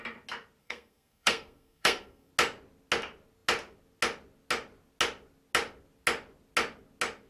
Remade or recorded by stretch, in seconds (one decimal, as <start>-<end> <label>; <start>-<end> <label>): 0.0-0.6 recorded; 0.6-2.3 remade; 2.3-7.3 recorded